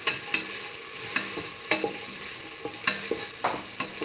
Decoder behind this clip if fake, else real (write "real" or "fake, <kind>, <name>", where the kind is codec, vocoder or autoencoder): real